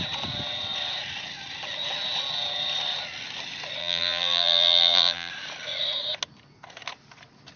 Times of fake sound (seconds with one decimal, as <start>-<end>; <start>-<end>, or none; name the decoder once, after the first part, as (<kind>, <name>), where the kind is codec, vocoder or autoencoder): 3.8-5.3 (vocoder, BigVGAN v2)